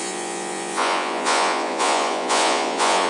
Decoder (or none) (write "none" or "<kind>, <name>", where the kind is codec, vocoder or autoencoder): vocoder, Vocos